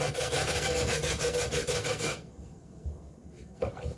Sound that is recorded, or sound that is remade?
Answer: remade